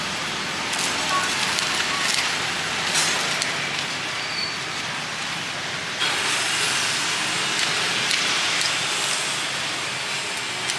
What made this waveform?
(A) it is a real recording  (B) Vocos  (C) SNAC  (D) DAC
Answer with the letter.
A